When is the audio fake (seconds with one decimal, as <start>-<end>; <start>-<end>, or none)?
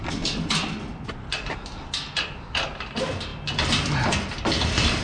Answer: none